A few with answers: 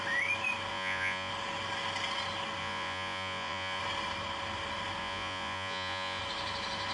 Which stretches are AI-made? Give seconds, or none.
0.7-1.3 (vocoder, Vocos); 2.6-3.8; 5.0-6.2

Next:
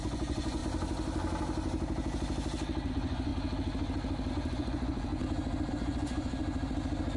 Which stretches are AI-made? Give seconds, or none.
0.0-0.6 (vocoder, Vocos); 2.9-3.3; 4.3-5.1; 5.7-6.4

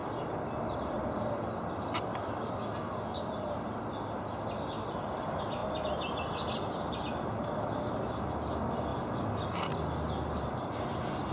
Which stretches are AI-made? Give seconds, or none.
none

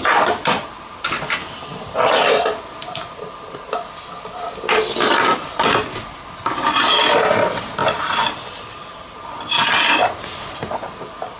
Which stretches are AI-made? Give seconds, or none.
none

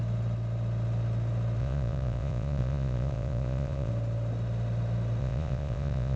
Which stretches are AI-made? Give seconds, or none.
1.6-3.9 (vocoder, Vocos); 5.2-6.2

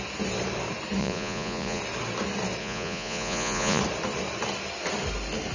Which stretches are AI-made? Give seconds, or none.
1.0-1.8 (vocoder, Vocos); 2.6-3.8

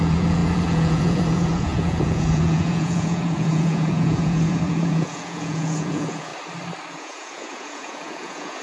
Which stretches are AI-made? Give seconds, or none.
0.0-6.3 (vocoder, Vocos); 6.9-8.6

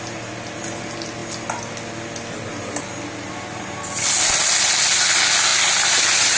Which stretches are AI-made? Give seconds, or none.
none